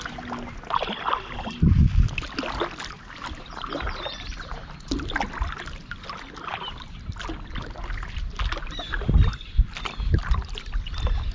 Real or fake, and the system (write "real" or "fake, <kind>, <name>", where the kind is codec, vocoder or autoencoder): real